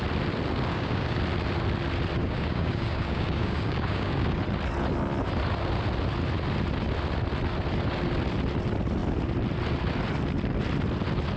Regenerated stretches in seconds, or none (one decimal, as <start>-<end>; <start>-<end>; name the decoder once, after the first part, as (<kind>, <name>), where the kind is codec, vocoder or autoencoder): 0.7-1.2 (codec, DAC); 2.2-4.4

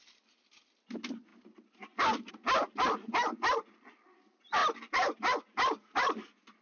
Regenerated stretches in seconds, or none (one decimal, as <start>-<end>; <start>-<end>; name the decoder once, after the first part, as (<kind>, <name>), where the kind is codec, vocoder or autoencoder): none